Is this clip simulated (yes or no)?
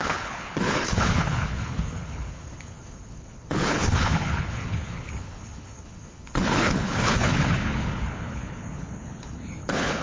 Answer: yes